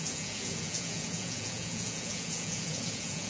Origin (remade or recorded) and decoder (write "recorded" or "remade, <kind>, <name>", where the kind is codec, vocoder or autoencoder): remade, vocoder, Vocos